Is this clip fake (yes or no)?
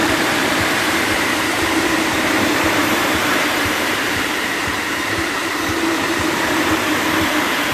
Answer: yes